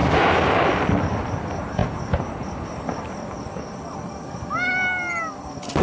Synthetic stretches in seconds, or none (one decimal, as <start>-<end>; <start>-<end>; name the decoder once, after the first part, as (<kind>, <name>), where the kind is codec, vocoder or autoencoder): none

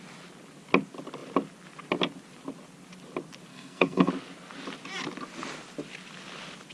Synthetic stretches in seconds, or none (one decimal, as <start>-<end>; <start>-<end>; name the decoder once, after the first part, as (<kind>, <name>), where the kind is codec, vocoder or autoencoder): 3.5-4.1 (codec, SNAC)

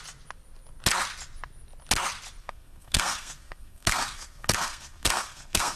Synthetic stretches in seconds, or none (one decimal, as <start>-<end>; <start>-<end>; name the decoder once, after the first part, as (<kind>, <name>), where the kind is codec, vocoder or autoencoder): 2.4-5.8 (codec, SNAC)

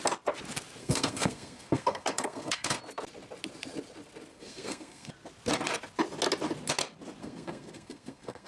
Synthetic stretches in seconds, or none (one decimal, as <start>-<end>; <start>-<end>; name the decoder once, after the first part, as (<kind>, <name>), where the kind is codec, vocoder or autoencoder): 0.8-2.8 (codec, SNAC); 4.3-5.1; 7.2-8.5

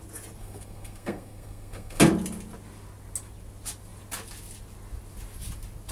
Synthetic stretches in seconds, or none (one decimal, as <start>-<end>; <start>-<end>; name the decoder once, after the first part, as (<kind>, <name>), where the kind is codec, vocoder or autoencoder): 0.4-2.0 (codec, SNAC)

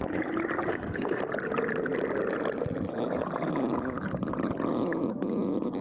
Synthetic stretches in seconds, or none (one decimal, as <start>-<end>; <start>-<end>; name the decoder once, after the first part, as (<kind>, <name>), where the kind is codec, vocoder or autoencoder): 0.7-1.2 (codec, SNAC)

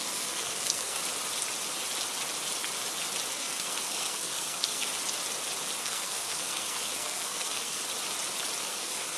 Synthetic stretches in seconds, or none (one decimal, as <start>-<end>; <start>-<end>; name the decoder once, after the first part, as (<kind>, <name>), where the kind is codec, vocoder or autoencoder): 0.0-1.0 (codec, SNAC); 3.3-4.9; 5.8-7.8; 8.6-9.2

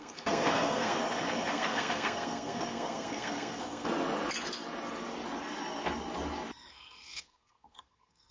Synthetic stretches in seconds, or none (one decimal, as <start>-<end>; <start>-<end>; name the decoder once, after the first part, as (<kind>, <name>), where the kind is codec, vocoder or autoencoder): 0.0-1.0 (codec, SNAC); 1.5-3.9; 6.7-8.3